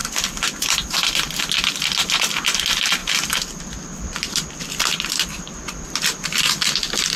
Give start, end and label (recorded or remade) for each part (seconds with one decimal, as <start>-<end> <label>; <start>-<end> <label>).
0.0-2.6 remade; 2.6-3.0 recorded; 3.0-6.0 remade; 6.0-7.2 recorded